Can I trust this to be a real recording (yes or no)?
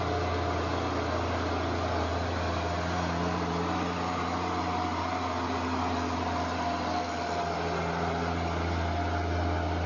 yes